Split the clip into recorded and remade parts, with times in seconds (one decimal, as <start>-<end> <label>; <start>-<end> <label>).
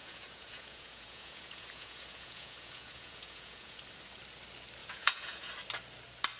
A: 0.0-3.8 remade; 3.8-4.8 recorded; 4.8-5.5 remade; 5.5-6.4 recorded